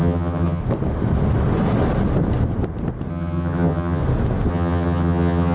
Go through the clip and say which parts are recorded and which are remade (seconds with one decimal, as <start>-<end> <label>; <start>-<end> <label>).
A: 0.0-0.6 remade; 0.6-3.1 recorded; 3.1-4.0 remade; 4.0-4.5 recorded; 4.5-5.5 remade